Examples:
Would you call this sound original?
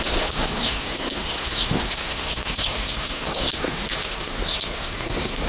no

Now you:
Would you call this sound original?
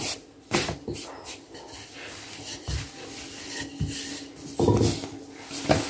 yes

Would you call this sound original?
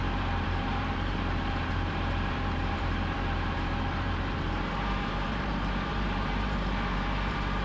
no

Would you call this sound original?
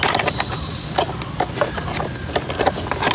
yes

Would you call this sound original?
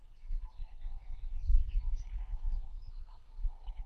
no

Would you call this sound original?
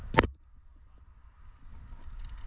yes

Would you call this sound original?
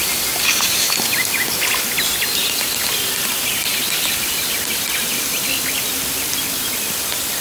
yes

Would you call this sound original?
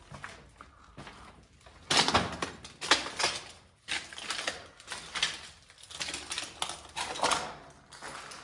yes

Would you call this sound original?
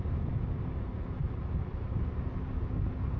yes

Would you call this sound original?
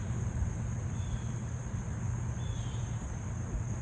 yes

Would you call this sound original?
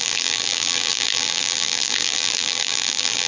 no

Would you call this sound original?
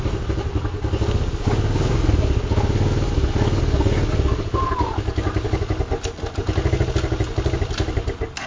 yes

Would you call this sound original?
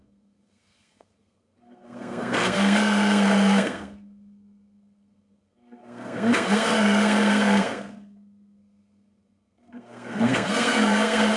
no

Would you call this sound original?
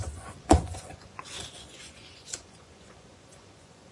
no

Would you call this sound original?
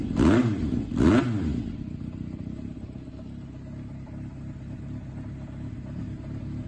yes